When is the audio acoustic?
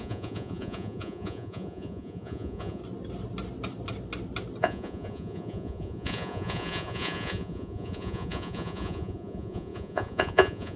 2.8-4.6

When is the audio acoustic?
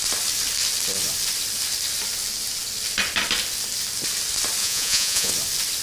0.0-4.6; 5.3-5.8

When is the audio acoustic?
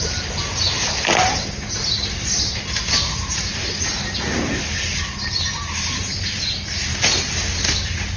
0.0-8.2